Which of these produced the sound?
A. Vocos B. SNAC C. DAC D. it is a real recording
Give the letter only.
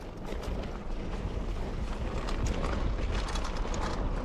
D